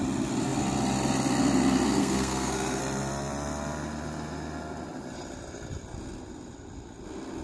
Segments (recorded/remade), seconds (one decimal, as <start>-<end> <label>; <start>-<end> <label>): 0.0-2.0 recorded; 2.0-2.8 remade; 2.8-7.4 recorded